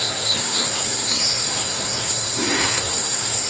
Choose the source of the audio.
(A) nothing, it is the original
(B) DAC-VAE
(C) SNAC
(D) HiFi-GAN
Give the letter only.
C